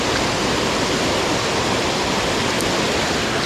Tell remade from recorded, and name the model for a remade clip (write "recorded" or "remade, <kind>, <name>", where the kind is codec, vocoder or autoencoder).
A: recorded